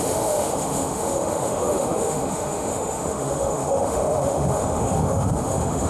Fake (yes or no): yes